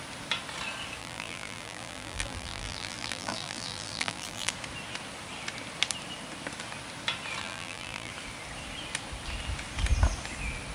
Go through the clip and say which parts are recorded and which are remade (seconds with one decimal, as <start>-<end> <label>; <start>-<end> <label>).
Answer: 0.0-1.0 recorded; 1.0-4.5 remade; 4.5-7.4 recorded; 7.4-8.1 remade; 8.1-10.7 recorded